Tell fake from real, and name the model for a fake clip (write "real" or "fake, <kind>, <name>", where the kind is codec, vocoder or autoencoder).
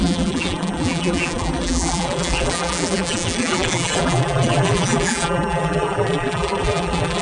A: fake, vocoder, BigVGAN v2